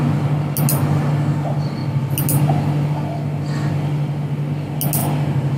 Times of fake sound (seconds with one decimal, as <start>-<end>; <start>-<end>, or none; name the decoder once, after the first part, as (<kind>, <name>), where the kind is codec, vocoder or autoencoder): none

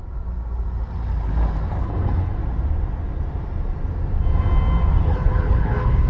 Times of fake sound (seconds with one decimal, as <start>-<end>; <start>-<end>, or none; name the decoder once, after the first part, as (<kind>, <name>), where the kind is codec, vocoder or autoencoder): 1.8-2.4 (codec, HILCodec); 5.0-6.1

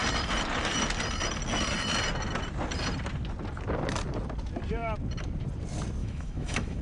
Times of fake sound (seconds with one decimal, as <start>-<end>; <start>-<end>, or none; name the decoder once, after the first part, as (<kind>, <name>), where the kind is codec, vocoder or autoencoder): 6.0-6.8 (autoencoder, DAC-VAE)

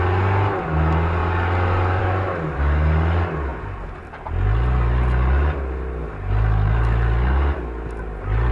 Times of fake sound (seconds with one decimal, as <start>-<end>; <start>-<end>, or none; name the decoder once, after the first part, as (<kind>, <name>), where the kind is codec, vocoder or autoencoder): none